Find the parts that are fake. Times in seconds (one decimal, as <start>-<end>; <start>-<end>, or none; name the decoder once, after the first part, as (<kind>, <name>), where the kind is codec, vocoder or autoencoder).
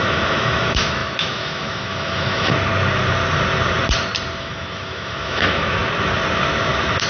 0.0-2.7 (autoencoder, DAC-VAE); 4.4-5.8